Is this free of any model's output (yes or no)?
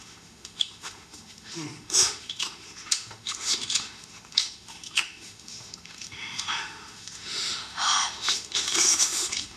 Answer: no